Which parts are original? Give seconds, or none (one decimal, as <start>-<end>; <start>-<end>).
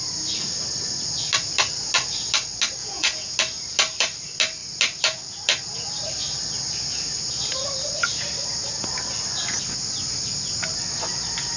0.0-2.8; 3.3-11.6